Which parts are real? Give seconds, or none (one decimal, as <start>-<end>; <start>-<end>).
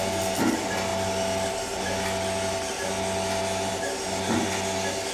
0.0-5.1